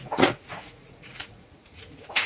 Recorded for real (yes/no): no